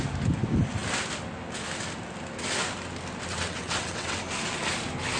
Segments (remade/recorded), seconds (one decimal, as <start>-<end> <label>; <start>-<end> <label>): 0.0-3.3 recorded; 3.3-4.2 remade; 4.2-5.2 recorded